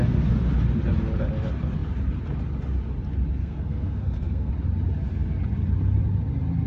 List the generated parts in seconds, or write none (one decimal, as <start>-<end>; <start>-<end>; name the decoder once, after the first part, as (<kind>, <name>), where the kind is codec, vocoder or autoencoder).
3.4-4.5 (codec, SNAC)